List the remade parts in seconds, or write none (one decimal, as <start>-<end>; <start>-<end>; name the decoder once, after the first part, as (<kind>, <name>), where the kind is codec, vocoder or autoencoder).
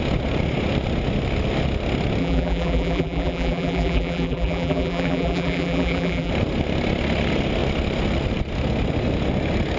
2.2-6.3 (vocoder, BigVGAN v2)